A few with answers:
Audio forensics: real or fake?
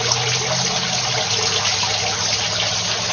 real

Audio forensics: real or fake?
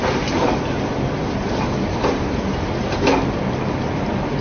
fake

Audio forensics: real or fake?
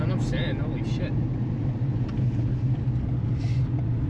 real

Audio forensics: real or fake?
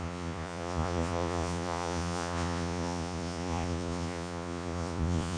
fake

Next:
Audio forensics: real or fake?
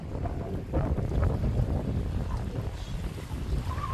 real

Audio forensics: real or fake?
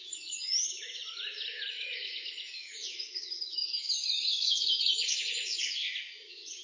fake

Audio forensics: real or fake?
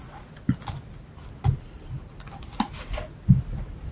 real